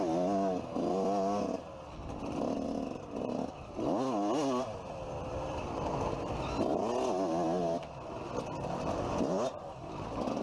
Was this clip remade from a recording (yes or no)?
no